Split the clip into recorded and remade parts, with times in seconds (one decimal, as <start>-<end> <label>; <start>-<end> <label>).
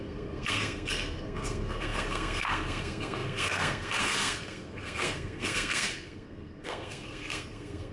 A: 0.0-7.9 remade